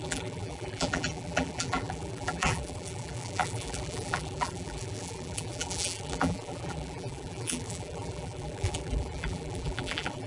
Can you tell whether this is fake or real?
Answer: fake